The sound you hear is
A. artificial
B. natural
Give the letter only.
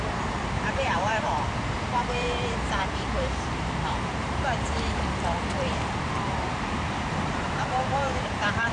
A